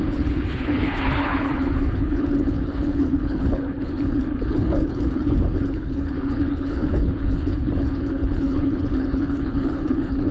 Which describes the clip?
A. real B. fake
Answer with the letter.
B